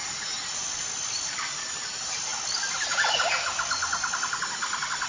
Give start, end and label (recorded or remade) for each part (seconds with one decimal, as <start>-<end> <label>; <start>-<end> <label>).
0.0-5.1 recorded